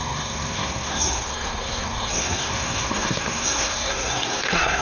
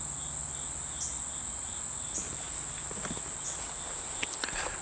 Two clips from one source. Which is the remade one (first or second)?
first